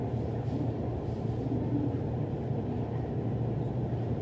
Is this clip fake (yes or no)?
yes